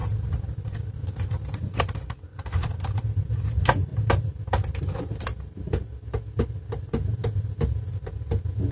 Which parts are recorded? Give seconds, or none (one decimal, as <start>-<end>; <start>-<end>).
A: 1.8-8.7